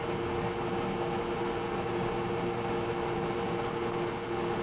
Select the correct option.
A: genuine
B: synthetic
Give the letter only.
A